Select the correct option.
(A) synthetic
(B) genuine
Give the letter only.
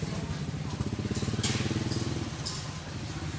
B